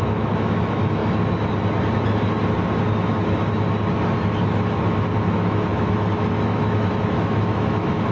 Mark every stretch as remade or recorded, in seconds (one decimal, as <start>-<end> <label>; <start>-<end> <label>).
0.0-1.0 remade; 1.0-5.3 recorded; 5.3-8.1 remade